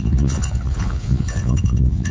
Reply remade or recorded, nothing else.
remade